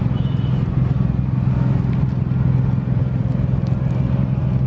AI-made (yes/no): no